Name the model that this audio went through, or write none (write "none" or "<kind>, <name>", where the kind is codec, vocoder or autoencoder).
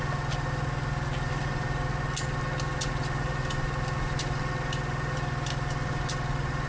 none